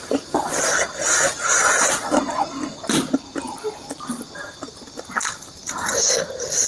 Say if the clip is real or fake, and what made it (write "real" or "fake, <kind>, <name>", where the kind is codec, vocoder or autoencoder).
real